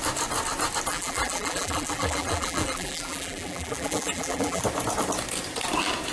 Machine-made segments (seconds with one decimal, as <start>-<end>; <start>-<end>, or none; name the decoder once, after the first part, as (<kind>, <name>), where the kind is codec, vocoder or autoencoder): 0.9-4.6 (vocoder, BigVGAN v2)